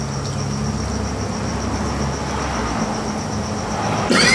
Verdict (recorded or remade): recorded